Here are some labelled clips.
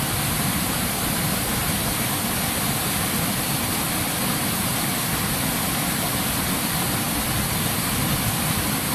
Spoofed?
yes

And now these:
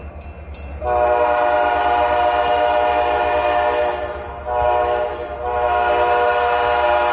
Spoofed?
no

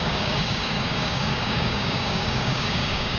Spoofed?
yes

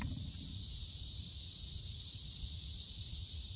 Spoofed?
yes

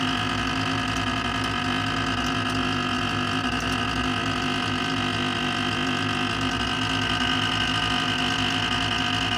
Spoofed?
no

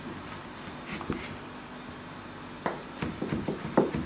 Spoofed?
no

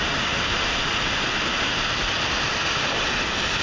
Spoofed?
no